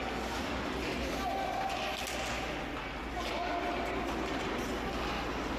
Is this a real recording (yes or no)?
yes